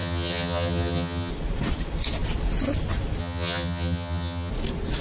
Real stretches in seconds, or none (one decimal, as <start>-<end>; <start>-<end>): 1.3-3.2; 4.5-5.0